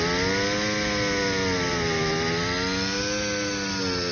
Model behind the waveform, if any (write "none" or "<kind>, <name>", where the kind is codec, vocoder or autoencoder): none